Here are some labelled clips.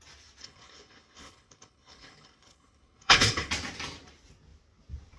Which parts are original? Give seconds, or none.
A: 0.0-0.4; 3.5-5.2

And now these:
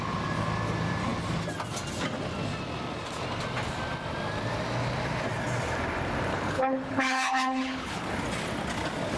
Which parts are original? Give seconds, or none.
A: 0.0-6.3; 8.1-9.2

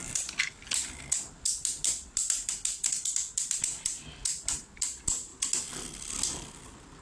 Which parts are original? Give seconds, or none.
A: 0.0-7.0